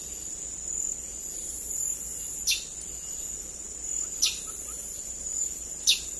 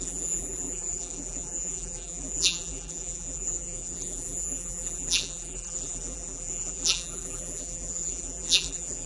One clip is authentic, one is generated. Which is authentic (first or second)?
first